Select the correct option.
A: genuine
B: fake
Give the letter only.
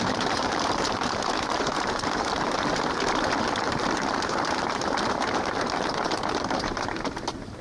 B